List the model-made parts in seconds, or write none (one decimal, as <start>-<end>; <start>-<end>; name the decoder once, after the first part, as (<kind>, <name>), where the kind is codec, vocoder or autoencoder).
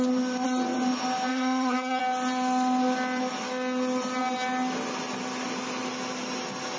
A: 1.3-2.0 (vocoder, HiFi-GAN)